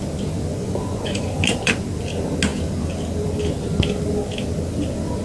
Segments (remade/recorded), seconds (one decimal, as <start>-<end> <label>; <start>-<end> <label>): 0.0-0.5 recorded; 0.5-1.7 remade; 1.7-5.2 recorded